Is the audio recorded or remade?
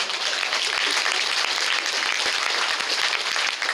recorded